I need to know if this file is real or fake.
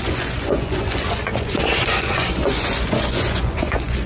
fake